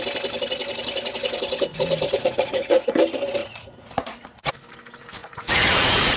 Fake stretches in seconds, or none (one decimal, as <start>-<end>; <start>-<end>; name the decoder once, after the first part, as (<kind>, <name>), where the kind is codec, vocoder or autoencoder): 1.7-2.9 (vocoder, Vocos); 3.4-4.5; 5.2-6.2